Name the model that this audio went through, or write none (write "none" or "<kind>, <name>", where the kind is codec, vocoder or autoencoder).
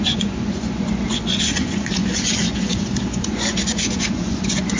vocoder, Vocos